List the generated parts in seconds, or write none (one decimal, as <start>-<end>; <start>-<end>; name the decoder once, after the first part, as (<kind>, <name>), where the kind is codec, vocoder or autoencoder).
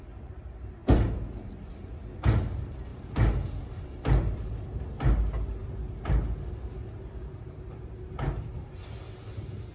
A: 0.8-1.7 (vocoder, BigVGAN v2)